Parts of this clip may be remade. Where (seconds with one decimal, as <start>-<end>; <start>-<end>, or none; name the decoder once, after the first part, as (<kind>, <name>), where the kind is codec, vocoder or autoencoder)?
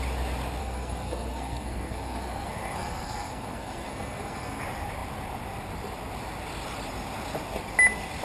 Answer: 0.6-4.6 (codec, SNAC)